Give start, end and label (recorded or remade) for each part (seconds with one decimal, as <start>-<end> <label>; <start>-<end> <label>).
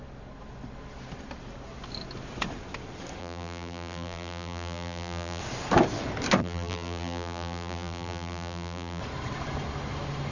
0.0-3.2 recorded; 3.2-5.4 remade; 5.4-6.4 recorded; 6.4-9.0 remade; 9.0-10.3 recorded